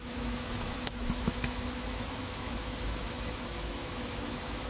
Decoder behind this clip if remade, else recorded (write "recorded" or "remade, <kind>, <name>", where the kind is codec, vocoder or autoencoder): remade, autoencoder, DAC-VAE